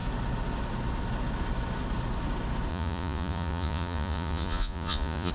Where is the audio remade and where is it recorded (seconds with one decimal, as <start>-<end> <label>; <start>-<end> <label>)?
0.0-2.7 recorded; 2.7-5.3 remade